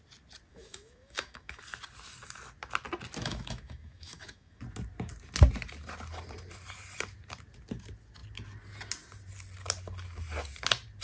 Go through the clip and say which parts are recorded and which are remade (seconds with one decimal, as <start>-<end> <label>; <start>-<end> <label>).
0.0-0.5 recorded; 0.5-1.6 remade; 1.6-3.2 recorded; 3.2-4.6 remade; 4.6-11.0 recorded